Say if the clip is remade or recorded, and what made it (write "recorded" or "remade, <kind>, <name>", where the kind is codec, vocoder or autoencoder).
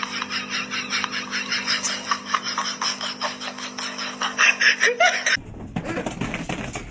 recorded